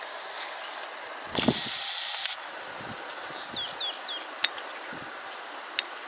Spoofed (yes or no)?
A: no